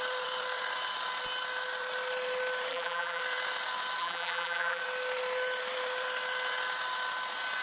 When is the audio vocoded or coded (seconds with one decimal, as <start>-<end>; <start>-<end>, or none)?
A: 2.7-3.2; 4.0-4.8